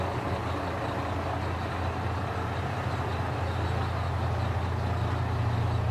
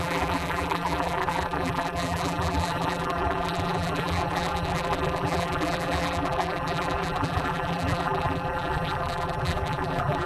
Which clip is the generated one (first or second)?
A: second